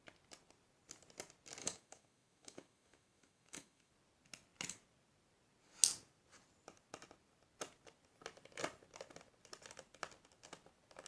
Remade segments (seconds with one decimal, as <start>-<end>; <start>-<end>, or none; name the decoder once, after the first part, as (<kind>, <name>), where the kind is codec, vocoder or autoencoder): 1.6-3.9 (autoencoder, DAC-VAE)